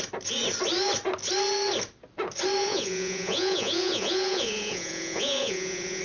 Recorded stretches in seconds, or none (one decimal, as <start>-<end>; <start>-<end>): 0.0-2.6